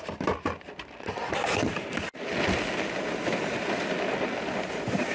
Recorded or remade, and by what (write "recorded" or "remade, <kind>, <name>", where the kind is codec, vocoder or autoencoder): recorded